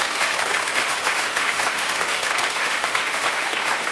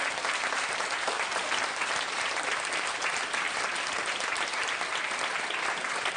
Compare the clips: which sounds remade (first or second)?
first